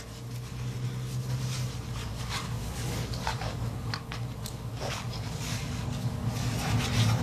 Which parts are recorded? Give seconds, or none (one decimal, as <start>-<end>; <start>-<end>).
0.0-2.0; 6.3-7.2